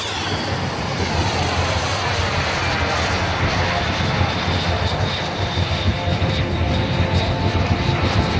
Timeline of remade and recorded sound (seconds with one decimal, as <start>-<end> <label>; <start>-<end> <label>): 0.0-5.9 recorded; 5.9-6.4 remade; 6.4-8.4 recorded